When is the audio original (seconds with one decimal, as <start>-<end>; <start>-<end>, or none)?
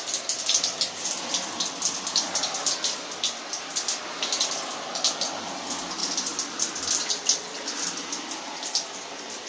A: 0.0-9.5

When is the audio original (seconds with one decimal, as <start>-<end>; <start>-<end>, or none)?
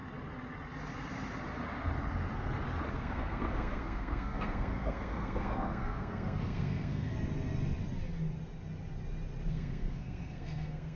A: 0.0-2.9; 7.1-9.5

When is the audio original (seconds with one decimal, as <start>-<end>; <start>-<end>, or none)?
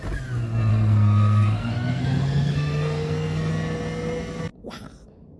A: 0.0-0.7; 3.5-5.4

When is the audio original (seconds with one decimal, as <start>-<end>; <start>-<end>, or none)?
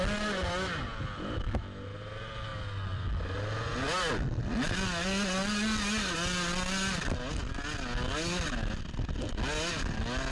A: 0.0-10.3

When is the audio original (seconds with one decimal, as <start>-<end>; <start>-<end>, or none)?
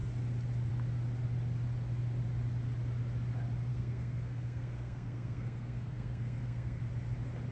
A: 0.0-3.7; 6.8-7.5